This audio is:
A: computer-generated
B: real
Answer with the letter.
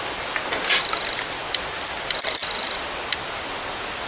B